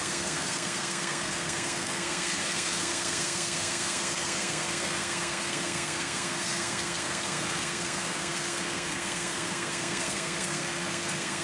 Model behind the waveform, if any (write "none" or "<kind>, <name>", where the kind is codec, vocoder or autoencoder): codec, SNAC